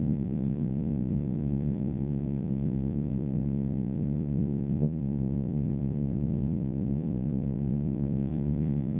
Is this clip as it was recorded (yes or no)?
no